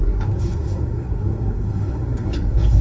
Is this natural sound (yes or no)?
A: no